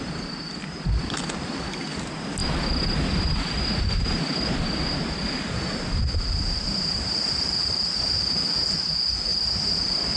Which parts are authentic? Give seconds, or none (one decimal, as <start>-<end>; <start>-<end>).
0.0-2.4; 4.2-10.2